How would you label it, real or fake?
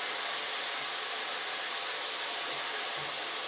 real